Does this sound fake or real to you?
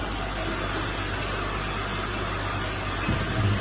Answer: real